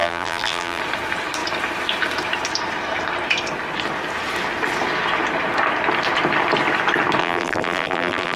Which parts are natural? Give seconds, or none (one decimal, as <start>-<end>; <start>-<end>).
0.8-7.2